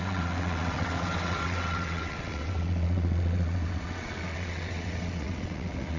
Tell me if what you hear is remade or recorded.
remade